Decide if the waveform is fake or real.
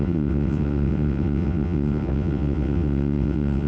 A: fake